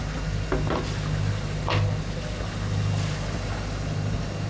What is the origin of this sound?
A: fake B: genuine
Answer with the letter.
B